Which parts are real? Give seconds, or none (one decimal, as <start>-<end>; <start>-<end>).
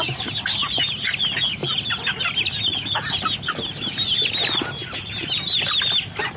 0.0-6.4